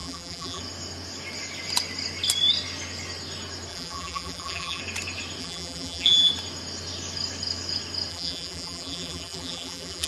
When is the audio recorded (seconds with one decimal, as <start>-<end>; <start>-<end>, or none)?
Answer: 0.6-3.7; 4.8-5.4; 6.3-8.1